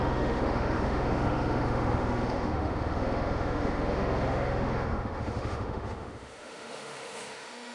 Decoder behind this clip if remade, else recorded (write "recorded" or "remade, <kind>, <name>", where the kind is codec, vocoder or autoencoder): remade, autoencoder, DAC-VAE